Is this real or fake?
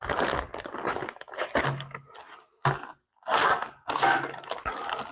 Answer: real